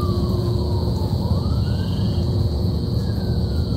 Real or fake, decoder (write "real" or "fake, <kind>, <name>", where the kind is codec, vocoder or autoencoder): fake, vocoder, Vocos